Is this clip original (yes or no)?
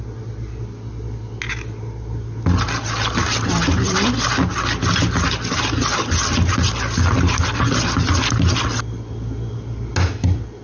yes